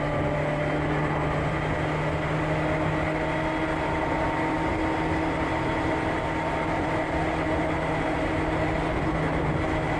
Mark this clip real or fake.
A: real